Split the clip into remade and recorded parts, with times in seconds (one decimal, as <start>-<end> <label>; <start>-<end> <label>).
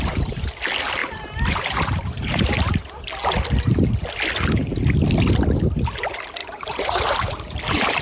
0.0-1.0 recorded; 1.0-2.5 remade; 2.5-6.4 recorded; 6.4-7.6 remade; 7.6-8.0 recorded